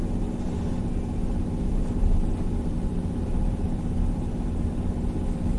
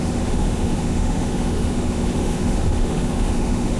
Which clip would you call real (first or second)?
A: first